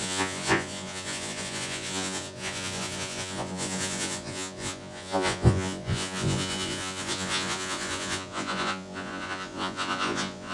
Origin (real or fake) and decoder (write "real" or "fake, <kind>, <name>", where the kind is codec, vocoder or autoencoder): fake, vocoder, Vocos